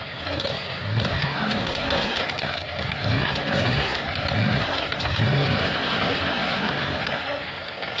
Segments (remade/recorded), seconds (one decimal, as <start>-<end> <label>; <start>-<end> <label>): 0.0-8.0 remade